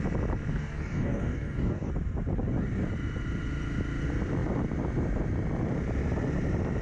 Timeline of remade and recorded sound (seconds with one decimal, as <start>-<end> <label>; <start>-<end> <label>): 0.0-0.5 recorded; 0.5-1.9 remade; 1.9-6.8 recorded